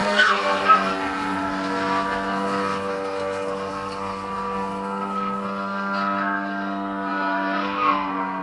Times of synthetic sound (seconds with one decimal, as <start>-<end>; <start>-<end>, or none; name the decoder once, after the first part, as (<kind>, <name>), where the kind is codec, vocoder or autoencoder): 0.0-8.4 (codec, SNAC)